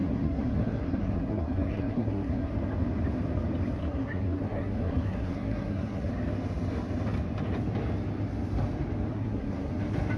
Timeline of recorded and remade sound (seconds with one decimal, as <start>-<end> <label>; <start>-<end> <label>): 0.0-2.5 remade; 2.5-3.8 recorded; 3.8-6.1 remade; 6.1-9.1 recorded; 9.1-9.7 remade; 9.7-10.2 recorded